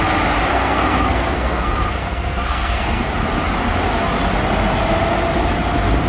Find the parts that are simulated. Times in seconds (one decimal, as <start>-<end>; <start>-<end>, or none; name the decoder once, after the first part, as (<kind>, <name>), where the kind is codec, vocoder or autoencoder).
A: 0.5-3.1 (codec, SNAC)